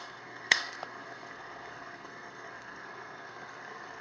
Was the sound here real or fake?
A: fake